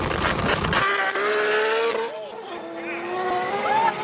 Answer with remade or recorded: recorded